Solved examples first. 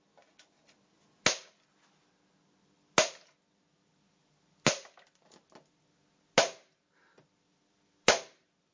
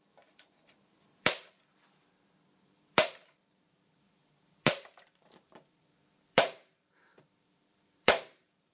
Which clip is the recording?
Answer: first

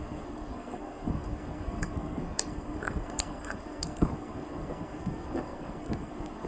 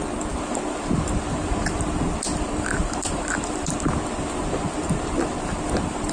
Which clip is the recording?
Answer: second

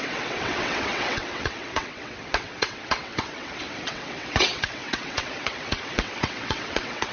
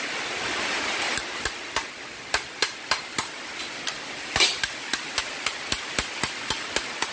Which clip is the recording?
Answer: second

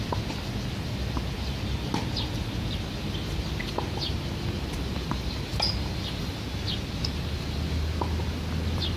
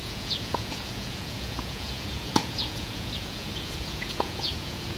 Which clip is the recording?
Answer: first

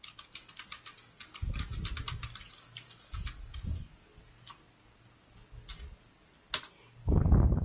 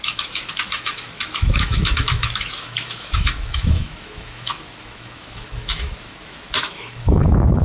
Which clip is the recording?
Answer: first